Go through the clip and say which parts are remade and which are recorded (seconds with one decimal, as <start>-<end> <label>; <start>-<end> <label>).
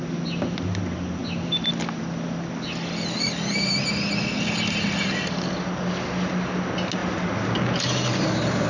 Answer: 0.0-8.7 recorded